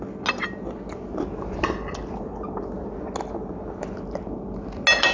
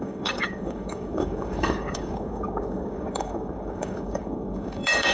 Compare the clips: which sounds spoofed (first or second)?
second